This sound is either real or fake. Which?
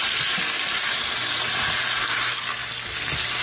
real